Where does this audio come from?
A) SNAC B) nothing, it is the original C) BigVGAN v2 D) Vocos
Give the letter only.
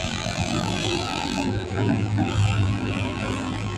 C